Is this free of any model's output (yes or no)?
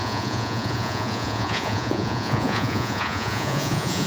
no